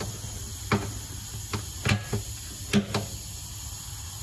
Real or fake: real